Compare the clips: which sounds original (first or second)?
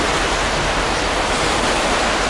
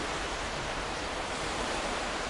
first